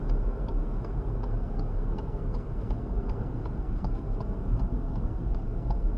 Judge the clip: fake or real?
fake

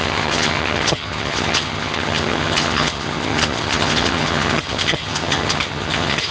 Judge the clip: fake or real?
fake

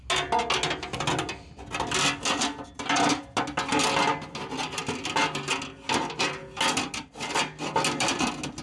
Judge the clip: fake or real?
real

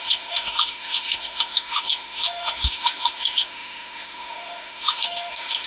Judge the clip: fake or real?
fake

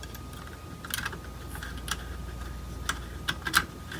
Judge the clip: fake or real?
real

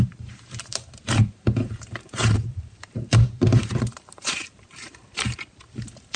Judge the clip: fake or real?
fake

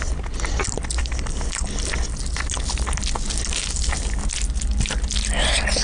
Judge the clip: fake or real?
real